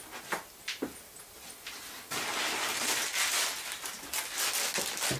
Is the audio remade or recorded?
recorded